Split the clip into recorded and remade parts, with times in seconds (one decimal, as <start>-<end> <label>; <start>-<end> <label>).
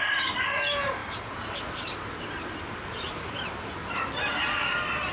0.0-5.1 recorded